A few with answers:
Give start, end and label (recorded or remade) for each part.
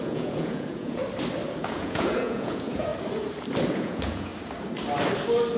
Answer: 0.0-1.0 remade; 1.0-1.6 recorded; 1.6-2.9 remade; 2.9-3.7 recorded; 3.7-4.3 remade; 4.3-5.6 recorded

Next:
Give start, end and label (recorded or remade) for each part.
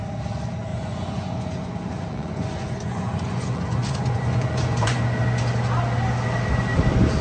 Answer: 0.0-0.7 recorded; 0.7-5.0 remade; 5.0-7.2 recorded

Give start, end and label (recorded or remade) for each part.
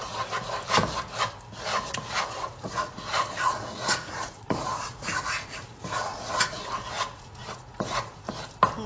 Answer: 0.0-1.7 recorded; 1.7-6.4 remade; 6.4-6.9 recorded; 6.9-8.3 remade; 8.3-8.9 recorded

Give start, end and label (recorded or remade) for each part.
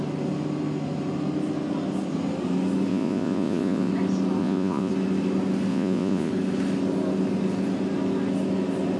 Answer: 0.0-2.9 recorded; 2.9-3.9 remade; 3.9-4.4 recorded; 4.4-4.9 remade; 4.9-5.7 recorded; 5.7-6.3 remade; 6.3-9.0 recorded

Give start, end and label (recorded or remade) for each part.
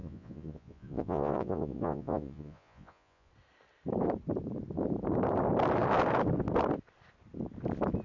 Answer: 0.0-3.3 remade; 3.3-8.0 recorded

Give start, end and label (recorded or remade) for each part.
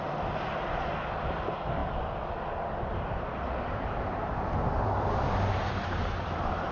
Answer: 0.0-6.7 recorded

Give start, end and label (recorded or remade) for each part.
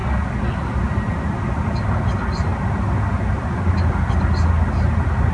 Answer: 0.0-5.3 recorded